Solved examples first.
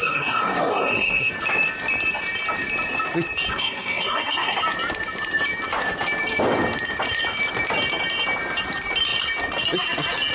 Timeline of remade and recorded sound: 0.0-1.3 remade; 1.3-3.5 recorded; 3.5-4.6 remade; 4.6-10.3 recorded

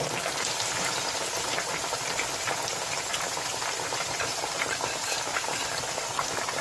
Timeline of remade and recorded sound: 0.0-3.1 recorded; 3.1-4.7 remade; 4.7-5.3 recorded; 5.3-6.6 remade

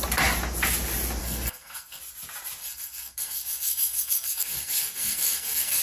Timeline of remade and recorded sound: 0.0-1.2 recorded; 1.2-2.0 remade; 2.0-2.6 recorded; 2.6-5.8 remade

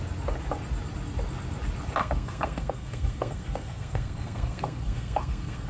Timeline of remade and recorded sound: 0.0-2.0 recorded; 2.0-5.7 remade

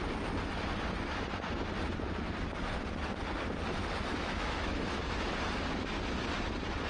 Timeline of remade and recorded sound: 0.0-4.1 recorded; 4.1-5.0 remade; 5.0-6.9 recorded

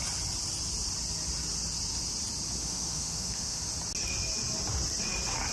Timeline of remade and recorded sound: 0.0-2.6 recorded; 2.6-3.6 remade; 3.6-5.5 recorded

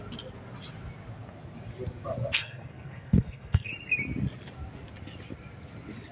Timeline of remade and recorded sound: 0.0-2.4 recorded; 2.4-3.7 remade; 3.7-6.1 recorded